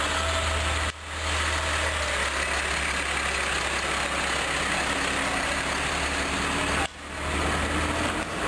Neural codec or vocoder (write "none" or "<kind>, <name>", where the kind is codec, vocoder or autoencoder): none